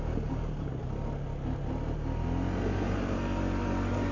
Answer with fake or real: real